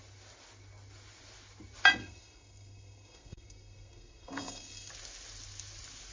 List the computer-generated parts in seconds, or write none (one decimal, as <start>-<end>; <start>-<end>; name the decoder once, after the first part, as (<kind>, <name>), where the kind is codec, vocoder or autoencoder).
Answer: 2.0-4.9 (codec, SNAC)